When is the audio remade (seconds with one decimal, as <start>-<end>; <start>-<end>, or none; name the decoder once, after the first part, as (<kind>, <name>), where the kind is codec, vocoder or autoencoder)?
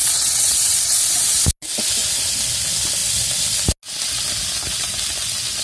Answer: 0.0-1.0 (vocoder, WaveNeXt)